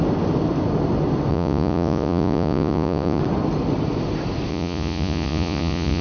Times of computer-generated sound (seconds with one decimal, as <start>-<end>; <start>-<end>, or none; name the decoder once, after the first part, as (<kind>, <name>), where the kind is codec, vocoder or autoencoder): 1.3-3.2 (vocoder, Vocos); 4.5-6.0